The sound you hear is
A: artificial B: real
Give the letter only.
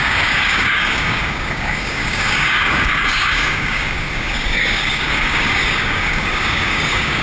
A